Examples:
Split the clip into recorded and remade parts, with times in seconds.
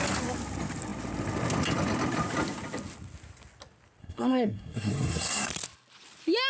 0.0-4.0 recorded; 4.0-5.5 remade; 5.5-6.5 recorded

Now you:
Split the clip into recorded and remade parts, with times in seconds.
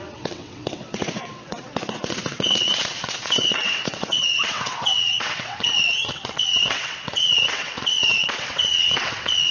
0.0-9.5 remade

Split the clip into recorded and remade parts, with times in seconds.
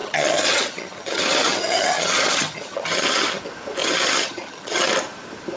0.0-3.4 remade; 3.4-3.8 recorded; 3.8-4.9 remade; 4.9-5.6 recorded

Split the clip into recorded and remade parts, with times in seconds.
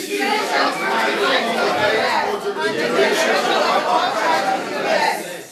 0.0-1.7 remade; 1.7-5.5 recorded